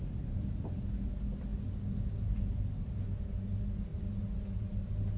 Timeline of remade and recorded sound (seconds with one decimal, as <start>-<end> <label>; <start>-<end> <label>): 0.0-5.2 recorded